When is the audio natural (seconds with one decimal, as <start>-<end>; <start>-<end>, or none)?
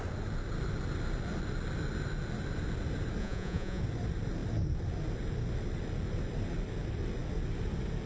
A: 0.0-3.2; 3.8-8.1